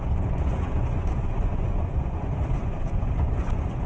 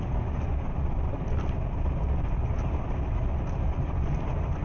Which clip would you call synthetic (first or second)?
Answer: first